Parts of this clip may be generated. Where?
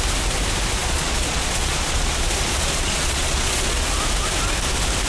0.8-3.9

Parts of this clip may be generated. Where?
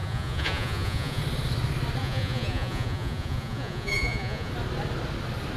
0.0-1.2; 2.0-4.5